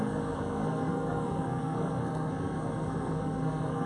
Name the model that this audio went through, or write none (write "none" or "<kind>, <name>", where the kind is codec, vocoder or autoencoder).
codec, SNAC